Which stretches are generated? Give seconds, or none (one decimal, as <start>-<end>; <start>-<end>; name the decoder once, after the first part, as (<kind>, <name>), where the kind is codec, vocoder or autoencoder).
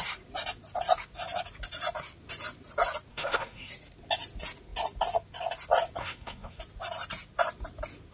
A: 3.1-3.7 (codec, SNAC); 6.0-6.6